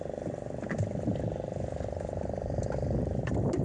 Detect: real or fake real